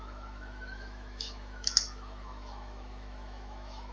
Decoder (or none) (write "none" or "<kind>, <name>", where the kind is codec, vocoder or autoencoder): autoencoder, DAC-VAE